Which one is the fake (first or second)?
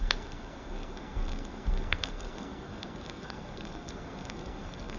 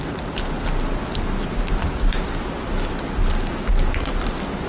first